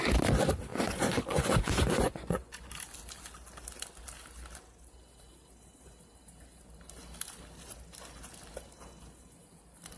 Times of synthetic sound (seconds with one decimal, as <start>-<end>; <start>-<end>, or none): 0.7-2.7